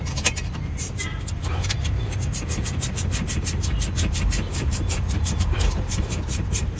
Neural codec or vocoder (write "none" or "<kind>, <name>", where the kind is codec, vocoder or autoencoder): vocoder, BigVGAN v2